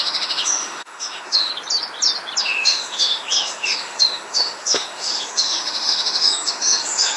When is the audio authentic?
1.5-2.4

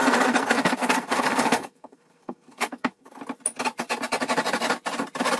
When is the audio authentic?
3.2-5.4

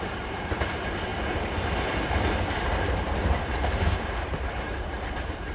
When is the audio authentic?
1.1-3.4